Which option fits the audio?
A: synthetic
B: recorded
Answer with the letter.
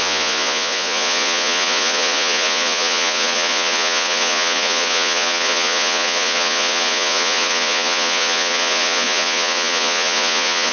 A